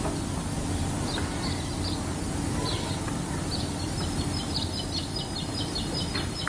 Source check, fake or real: fake